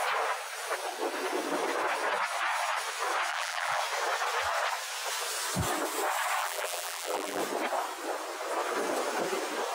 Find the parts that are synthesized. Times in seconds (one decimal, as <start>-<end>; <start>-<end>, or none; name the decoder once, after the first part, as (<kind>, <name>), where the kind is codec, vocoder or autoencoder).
3.3-3.8 (vocoder, BigVGAN v2); 6.4-7.4